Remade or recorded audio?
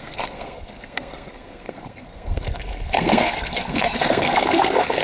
remade